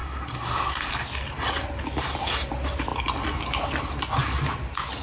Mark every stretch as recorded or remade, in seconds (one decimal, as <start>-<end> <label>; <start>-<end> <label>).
0.0-0.9 remade; 0.9-5.0 recorded